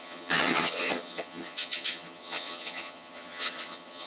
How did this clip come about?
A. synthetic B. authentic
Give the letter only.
A